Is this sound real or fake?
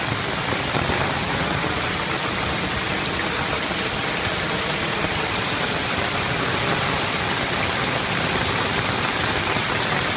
real